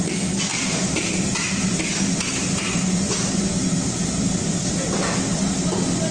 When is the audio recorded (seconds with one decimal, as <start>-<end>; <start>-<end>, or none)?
0.0-0.5; 1.8-2.4; 4.7-6.1